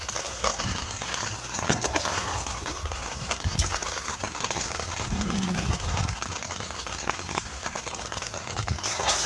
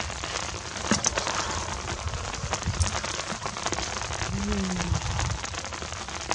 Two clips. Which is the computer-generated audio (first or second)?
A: first